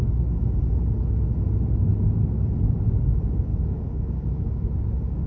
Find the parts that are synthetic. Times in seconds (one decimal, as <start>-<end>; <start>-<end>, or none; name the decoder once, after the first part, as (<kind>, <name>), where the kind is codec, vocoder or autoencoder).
3.5-4.7 (codec, DAC)